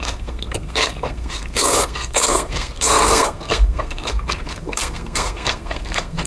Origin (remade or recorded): remade